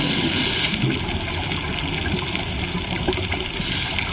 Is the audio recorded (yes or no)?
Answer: yes